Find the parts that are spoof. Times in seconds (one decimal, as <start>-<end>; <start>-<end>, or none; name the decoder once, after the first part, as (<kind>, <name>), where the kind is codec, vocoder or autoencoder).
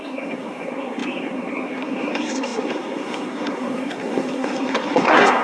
0.0-5.4 (codec, SNAC)